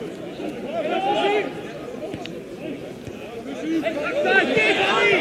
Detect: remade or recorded recorded